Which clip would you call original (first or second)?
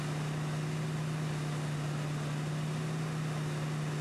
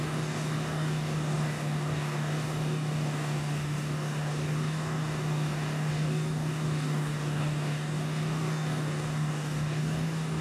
first